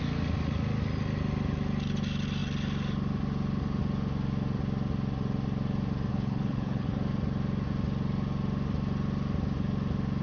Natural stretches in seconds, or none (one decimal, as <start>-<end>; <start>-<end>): 0.0-6.1; 6.9-10.2